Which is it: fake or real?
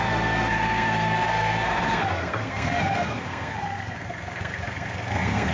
fake